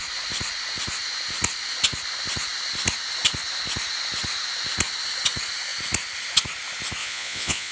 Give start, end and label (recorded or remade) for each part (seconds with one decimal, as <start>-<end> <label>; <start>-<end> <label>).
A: 0.0-7.0 recorded; 7.0-7.7 remade